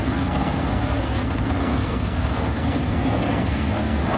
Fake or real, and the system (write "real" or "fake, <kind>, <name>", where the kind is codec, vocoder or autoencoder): fake, codec, SNAC